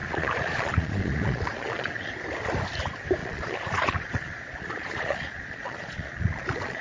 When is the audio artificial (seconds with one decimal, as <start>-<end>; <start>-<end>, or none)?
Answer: 0.0-2.1; 3.2-6.8